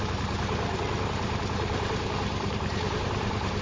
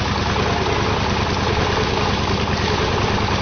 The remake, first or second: first